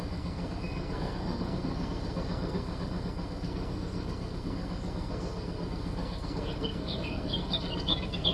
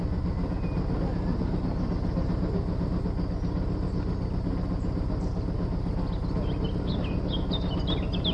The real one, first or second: second